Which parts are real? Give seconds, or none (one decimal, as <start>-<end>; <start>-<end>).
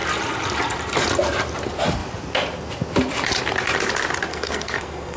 0.0-4.3